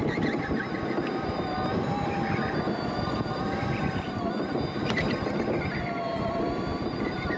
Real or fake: real